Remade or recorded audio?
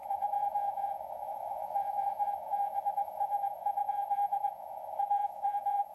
remade